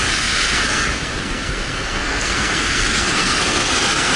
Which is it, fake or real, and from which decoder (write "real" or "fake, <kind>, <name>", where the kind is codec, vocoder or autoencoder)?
fake, codec, SNAC